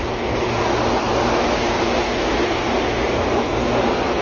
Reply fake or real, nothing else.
real